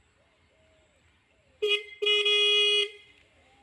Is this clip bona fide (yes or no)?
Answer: no